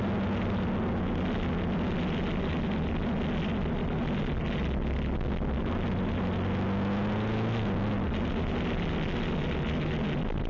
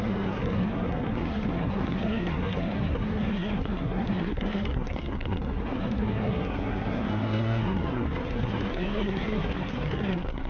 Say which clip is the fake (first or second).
second